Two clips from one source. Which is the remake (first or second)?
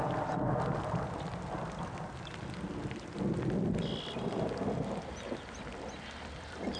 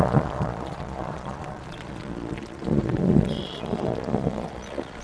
second